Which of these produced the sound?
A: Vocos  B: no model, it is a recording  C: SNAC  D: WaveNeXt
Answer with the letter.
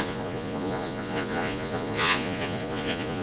A